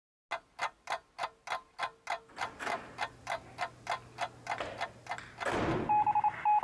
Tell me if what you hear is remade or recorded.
recorded